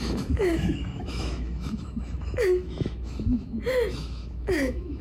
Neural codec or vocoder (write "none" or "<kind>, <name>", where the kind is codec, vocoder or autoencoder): autoencoder, DAC-VAE